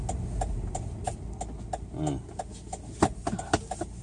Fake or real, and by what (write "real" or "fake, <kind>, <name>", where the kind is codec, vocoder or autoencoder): real